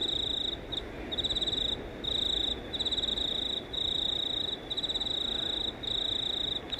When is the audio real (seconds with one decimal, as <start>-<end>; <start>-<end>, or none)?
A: 0.0-3.1; 4.4-6.8